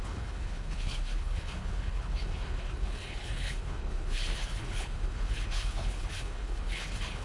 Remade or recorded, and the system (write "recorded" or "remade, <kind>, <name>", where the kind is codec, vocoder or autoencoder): remade, codec, HILCodec